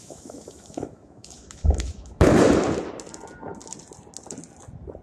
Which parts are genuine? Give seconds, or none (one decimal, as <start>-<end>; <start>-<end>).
2.4-5.0